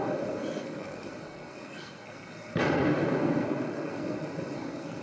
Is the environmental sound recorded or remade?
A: remade